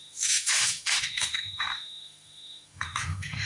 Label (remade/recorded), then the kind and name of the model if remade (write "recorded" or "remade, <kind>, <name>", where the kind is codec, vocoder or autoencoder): remade, autoencoder, DAC-VAE